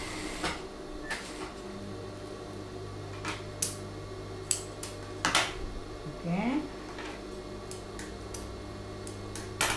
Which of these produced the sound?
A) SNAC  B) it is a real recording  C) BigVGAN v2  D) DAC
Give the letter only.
B